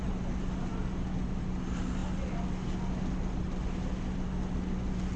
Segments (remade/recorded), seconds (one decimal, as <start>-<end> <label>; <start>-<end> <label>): 0.0-5.2 recorded